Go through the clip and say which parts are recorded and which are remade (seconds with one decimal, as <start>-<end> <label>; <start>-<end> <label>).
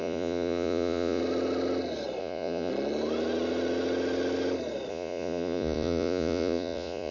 0.0-1.2 remade; 1.2-2.2 recorded; 2.2-2.7 remade; 2.7-4.9 recorded; 4.9-7.1 remade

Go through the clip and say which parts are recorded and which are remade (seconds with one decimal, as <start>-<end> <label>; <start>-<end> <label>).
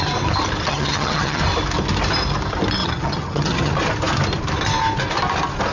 0.0-0.7 recorded; 0.7-1.4 remade; 1.4-2.8 recorded; 2.8-3.7 remade; 3.7-5.7 recorded